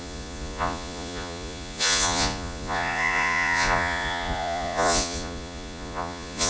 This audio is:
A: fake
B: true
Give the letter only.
A